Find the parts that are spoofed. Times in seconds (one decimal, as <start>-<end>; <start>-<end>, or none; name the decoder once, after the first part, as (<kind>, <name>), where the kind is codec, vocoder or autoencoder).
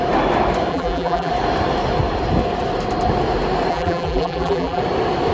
0.7-1.3 (vocoder, BigVGAN v2); 3.7-4.8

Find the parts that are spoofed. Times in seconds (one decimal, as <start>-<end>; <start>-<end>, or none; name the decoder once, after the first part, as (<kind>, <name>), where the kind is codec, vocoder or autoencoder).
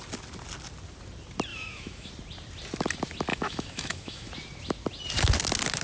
1.5-2.1 (autoencoder, DAC-VAE); 3.3-4.3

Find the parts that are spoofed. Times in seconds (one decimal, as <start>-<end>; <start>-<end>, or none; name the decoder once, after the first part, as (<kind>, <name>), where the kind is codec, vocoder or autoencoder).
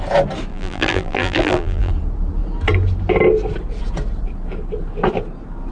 0.5-1.9 (vocoder, BigVGAN v2)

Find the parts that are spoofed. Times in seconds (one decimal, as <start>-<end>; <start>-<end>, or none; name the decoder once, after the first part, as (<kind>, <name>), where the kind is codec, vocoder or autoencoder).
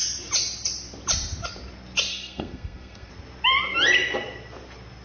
2.1-3.1 (codec, SNAC)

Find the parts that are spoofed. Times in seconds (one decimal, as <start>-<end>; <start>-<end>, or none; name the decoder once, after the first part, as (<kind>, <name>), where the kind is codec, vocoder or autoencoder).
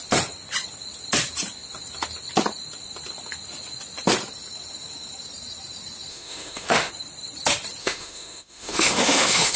6.1-6.9 (autoencoder, DAC-VAE); 7.8-9.6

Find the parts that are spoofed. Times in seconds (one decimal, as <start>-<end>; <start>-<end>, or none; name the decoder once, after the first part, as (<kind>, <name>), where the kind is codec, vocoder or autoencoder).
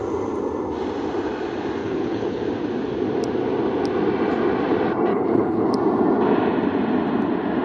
1.8-2.4 (codec, HILCodec); 5.1-5.7